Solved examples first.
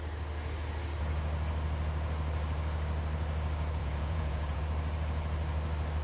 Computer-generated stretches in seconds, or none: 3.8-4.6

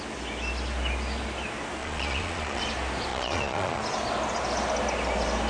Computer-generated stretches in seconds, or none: 1.8-2.6; 3.1-3.8

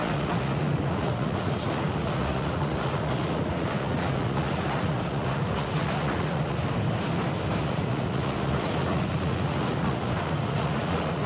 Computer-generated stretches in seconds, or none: 0.0-6.6; 7.6-11.3

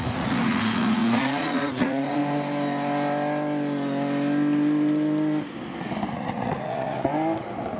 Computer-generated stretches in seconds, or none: 0.0-2.2; 6.1-7.1

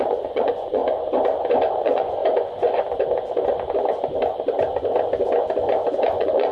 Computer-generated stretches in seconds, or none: 0.0-0.8; 1.7-2.2; 6.0-6.5